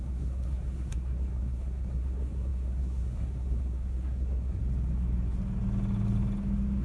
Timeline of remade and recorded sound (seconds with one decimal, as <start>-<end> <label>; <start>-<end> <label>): 0.0-4.6 remade; 4.6-6.8 recorded